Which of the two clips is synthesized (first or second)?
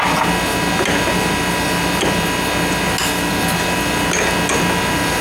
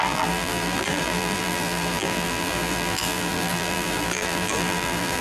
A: second